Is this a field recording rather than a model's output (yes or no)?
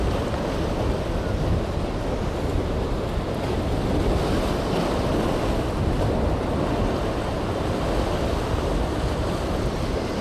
yes